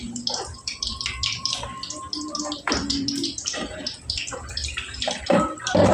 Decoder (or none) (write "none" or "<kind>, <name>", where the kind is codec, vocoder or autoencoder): vocoder, BigVGAN v2